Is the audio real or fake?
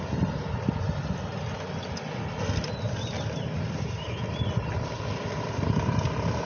real